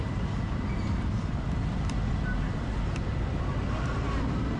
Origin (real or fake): real